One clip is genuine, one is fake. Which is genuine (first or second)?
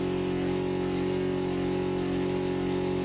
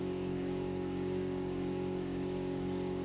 first